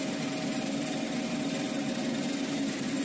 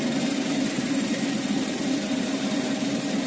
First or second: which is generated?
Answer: second